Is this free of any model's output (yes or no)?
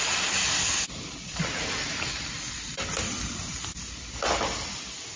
yes